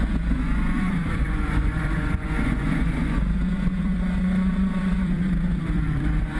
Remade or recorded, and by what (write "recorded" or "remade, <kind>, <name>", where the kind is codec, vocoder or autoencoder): remade, vocoder, Vocos